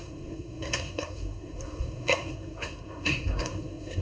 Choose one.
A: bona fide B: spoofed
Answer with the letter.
B